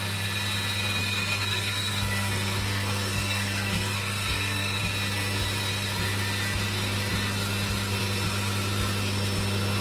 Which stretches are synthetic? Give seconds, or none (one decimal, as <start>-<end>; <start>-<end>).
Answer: 1.0-4.8